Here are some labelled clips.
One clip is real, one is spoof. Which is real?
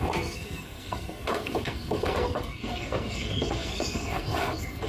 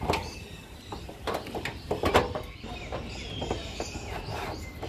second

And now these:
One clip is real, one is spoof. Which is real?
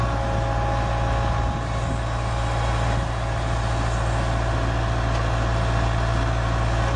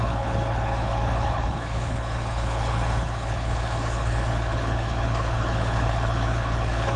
first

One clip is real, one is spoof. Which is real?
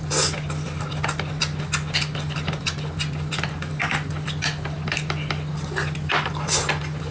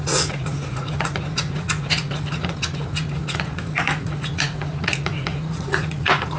first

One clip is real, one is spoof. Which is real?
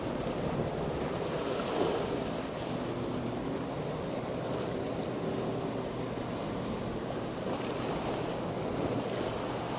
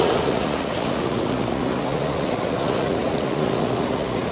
first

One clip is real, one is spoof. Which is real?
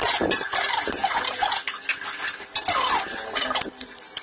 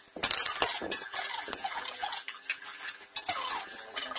first